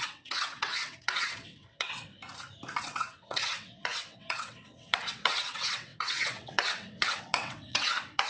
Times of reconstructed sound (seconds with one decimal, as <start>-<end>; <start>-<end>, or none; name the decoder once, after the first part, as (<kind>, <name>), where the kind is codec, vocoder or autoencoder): 0.0-2.1 (vocoder, WaveNeXt); 2.8-8.3